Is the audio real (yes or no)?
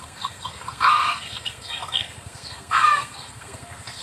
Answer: no